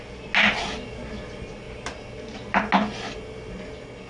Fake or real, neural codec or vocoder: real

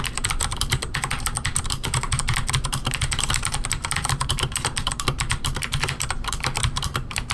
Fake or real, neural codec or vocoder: fake, vocoder, BigVGAN v2